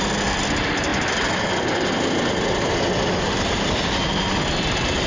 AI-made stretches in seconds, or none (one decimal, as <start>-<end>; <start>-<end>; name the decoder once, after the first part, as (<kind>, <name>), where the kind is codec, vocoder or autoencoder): none